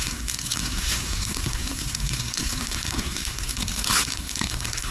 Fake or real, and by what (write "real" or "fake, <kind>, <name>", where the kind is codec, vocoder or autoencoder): fake, codec, SNAC